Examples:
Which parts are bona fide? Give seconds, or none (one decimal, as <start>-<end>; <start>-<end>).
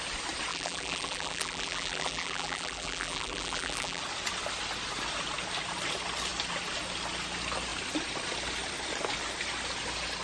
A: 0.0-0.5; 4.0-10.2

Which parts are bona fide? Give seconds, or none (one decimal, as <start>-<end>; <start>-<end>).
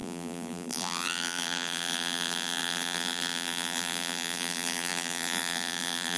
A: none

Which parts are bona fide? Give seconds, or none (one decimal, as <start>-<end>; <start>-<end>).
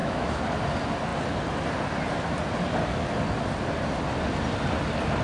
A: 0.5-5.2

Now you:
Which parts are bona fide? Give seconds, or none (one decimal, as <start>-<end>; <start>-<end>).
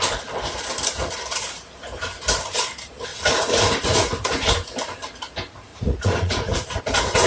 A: 0.0-3.1; 4.5-5.7; 6.8-7.3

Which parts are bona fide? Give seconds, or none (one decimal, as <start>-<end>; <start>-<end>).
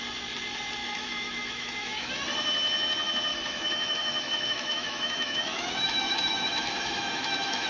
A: 0.0-0.8; 2.1-3.3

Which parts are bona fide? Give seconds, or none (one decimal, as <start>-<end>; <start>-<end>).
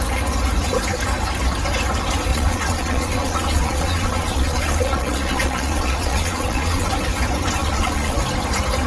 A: 0.0-2.3; 6.9-7.6; 8.2-8.9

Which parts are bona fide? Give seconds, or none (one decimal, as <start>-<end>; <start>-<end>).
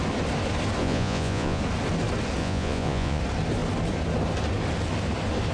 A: 0.0-0.8; 1.6-2.4; 3.2-5.5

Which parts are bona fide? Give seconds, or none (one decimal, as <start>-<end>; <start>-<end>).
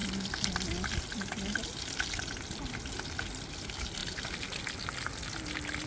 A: 0.0-5.9